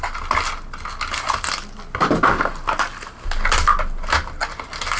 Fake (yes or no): no